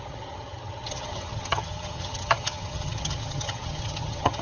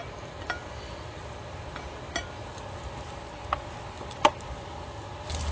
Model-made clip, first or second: first